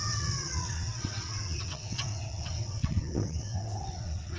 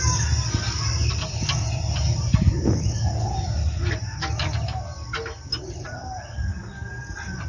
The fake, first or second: first